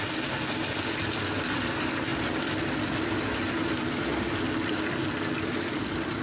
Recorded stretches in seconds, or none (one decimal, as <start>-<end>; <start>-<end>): 0.0-6.2